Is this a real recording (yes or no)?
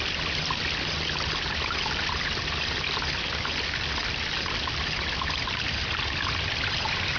yes